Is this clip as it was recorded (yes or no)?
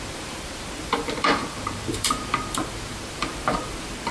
no